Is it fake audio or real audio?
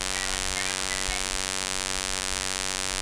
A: real